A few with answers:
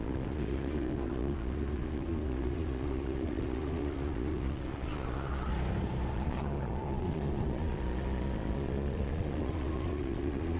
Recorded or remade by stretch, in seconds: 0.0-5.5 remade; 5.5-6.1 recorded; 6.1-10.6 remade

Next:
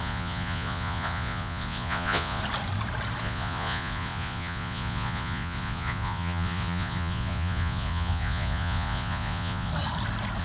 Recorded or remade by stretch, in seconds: 0.0-2.4 remade; 2.4-3.2 recorded; 3.2-9.7 remade; 9.7-10.4 recorded

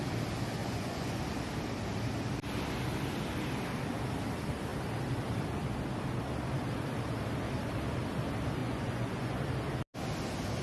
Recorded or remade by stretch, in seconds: 0.0-0.6 recorded; 0.6-1.2 remade; 1.2-8.6 recorded; 8.6-9.4 remade; 9.4-10.6 recorded